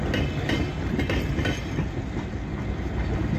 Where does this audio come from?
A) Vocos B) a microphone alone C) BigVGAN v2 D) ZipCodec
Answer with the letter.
B